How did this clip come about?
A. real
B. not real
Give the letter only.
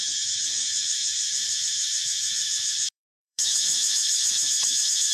B